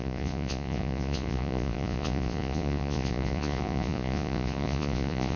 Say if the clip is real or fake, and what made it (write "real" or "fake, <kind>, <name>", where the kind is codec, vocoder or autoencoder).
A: fake, vocoder, Vocos